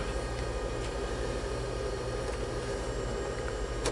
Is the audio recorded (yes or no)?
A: no